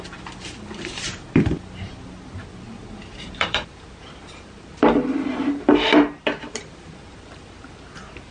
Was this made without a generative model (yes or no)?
no